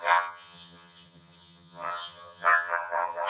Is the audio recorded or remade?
remade